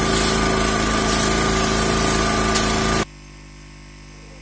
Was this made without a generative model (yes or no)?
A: yes